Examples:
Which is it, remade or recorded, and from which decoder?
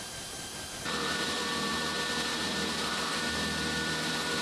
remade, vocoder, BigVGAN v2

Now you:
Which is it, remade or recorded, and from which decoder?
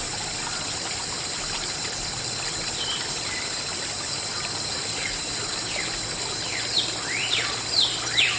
remade, vocoder, BigVGAN v2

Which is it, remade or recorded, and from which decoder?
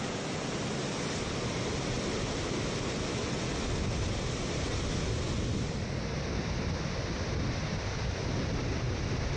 recorded